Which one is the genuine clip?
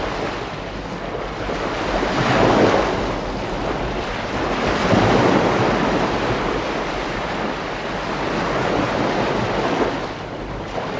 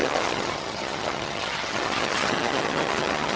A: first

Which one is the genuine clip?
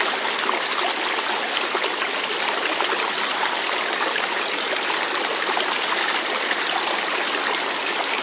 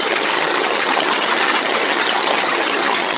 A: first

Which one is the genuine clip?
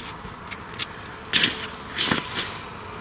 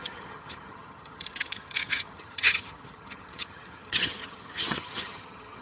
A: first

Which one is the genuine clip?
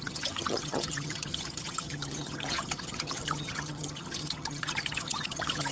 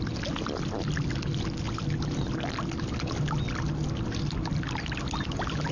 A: second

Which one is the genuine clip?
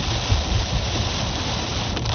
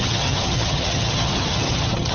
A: first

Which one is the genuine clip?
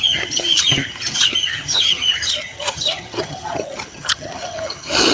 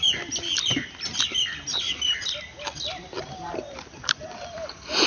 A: second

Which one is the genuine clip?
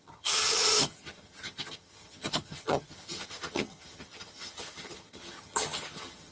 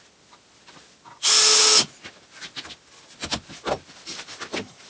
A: second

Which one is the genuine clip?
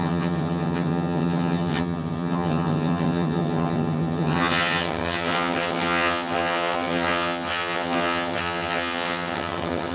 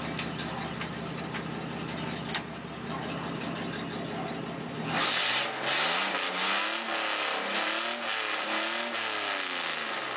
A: second